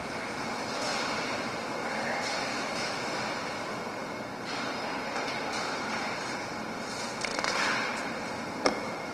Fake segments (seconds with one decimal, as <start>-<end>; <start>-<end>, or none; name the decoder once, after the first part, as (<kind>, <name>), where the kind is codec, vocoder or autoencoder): 2.5-3.2 (autoencoder, DAC-VAE)